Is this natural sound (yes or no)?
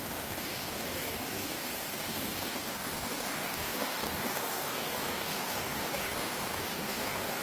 no